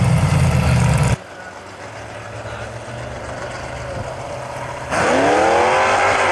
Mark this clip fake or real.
real